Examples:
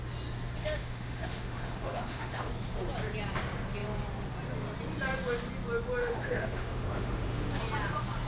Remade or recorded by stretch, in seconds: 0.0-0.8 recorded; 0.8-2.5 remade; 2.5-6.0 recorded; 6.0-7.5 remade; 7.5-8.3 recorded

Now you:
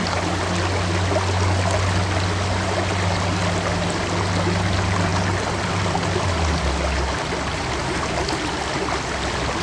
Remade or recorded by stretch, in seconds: 0.0-9.6 recorded

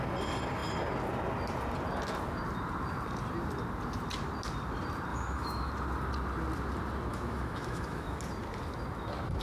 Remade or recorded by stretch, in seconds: 0.0-5.1 recorded; 5.1-5.7 remade; 5.7-7.1 recorded; 7.1-8.2 remade; 8.2-9.4 recorded

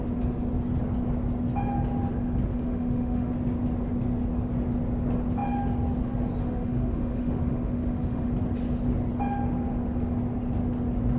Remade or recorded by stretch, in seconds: 0.0-2.5 recorded; 2.5-3.3 remade; 3.3-6.4 recorded; 6.4-8.3 remade; 8.3-11.2 recorded

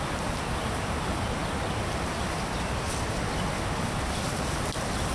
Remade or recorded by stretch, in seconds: 0.0-5.1 recorded

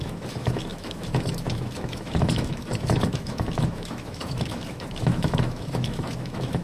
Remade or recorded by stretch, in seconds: 0.0-6.6 remade